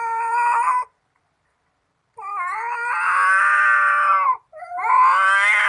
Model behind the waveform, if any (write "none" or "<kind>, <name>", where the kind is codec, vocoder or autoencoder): vocoder, BigVGAN v2